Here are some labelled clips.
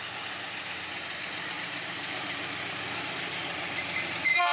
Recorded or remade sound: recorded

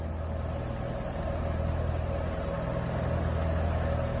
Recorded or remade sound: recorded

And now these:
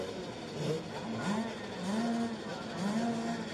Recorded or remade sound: recorded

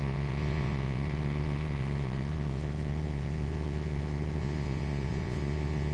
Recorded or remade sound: remade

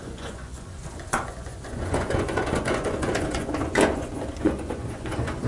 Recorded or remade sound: remade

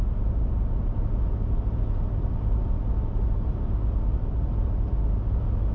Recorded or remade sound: recorded